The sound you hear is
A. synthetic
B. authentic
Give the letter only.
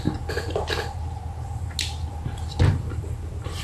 B